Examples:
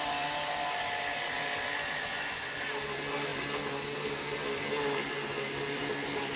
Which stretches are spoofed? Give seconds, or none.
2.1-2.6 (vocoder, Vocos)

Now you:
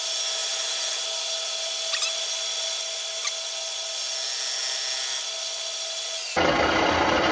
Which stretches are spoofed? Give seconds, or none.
none

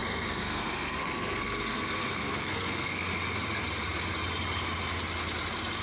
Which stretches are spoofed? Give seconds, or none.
0.0-3.1 (codec, SNAC)

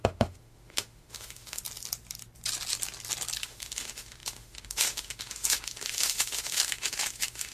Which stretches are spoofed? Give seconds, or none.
0.0-1.6 (autoencoder, DAC-VAE); 3.4-7.5

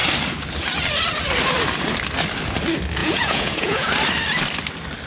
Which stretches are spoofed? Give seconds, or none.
3.0-3.9 (vocoder, Vocos)

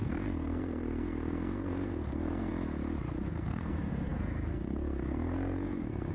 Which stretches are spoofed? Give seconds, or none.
0.0-2.5 (codec, SNAC); 3.3-6.1